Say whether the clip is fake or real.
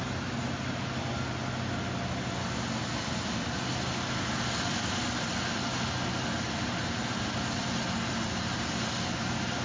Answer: real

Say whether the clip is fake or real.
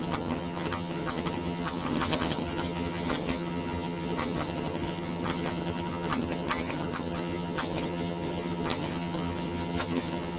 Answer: fake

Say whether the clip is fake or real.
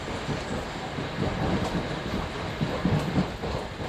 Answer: real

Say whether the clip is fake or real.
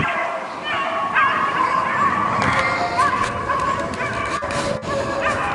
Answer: real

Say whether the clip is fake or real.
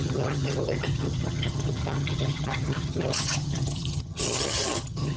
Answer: fake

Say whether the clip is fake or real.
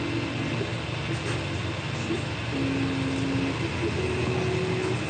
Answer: real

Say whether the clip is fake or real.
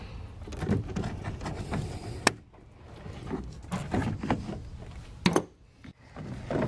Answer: real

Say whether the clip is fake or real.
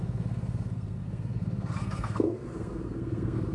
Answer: fake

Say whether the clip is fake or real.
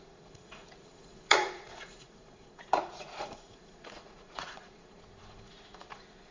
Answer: fake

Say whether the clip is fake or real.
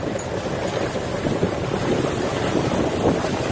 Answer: real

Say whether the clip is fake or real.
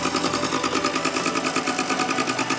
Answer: real